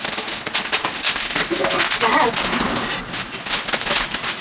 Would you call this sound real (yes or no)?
yes